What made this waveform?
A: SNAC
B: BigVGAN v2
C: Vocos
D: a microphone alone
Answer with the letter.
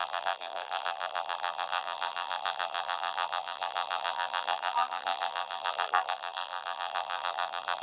B